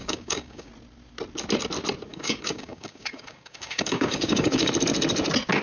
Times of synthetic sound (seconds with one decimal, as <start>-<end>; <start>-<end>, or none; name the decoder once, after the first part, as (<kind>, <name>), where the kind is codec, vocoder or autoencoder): 0.0-0.7 (codec, DAC); 2.1-4.7